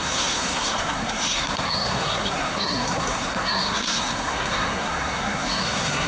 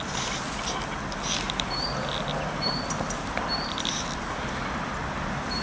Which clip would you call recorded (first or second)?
second